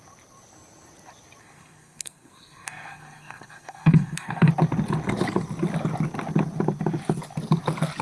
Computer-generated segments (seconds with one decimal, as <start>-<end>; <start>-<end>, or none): 1.4-4.5